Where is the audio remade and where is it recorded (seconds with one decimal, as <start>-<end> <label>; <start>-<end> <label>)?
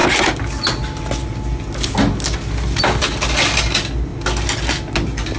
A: 0.0-5.4 recorded